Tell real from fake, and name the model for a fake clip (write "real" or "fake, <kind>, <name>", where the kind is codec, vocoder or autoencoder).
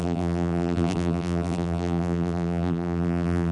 fake, vocoder, BigVGAN v2